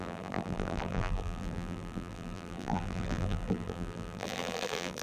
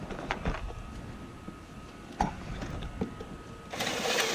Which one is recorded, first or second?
second